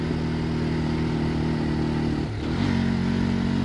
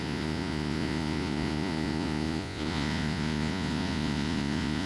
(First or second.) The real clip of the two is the first